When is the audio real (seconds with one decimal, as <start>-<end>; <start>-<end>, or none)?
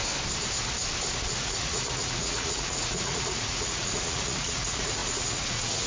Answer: 0.0-1.3